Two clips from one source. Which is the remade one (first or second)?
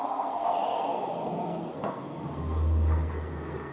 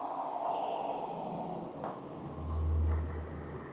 first